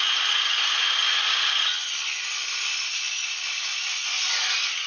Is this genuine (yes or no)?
yes